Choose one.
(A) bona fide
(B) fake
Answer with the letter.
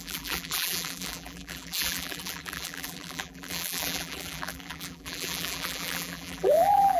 B